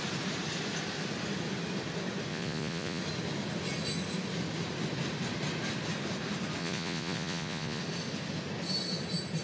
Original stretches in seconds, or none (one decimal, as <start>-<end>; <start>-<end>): 0.0-2.3; 3.0-6.6; 7.8-9.4